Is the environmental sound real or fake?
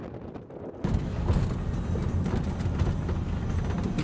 real